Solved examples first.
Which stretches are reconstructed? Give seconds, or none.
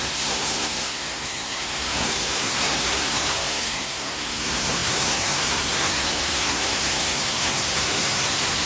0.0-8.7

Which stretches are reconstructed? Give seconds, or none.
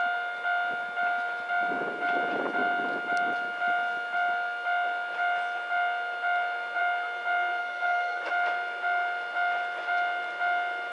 7.6-8.3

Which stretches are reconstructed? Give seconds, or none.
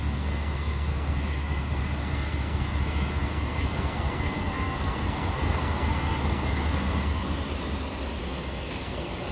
0.0-7.2; 8.2-9.3